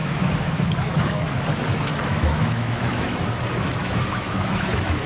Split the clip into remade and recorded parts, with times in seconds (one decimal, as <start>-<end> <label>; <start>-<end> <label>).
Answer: 0.0-1.4 remade; 1.4-2.1 recorded; 2.1-3.2 remade; 3.2-3.8 recorded; 3.8-5.1 remade